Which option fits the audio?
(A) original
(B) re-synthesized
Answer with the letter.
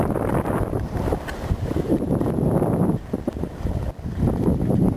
B